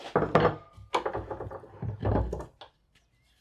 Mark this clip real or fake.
real